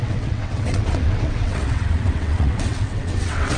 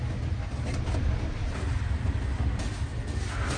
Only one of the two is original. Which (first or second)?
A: second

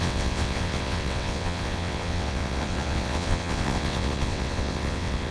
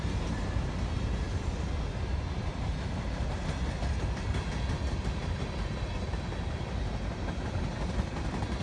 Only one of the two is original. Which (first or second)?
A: second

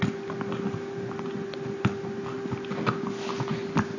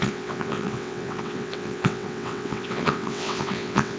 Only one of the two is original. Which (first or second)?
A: first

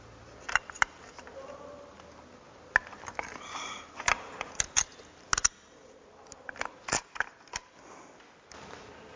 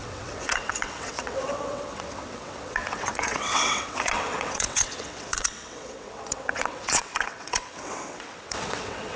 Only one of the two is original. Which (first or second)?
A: first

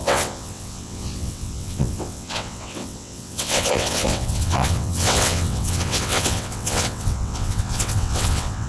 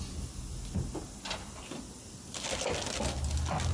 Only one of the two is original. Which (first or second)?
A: second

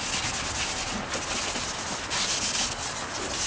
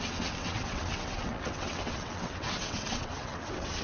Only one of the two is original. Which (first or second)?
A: first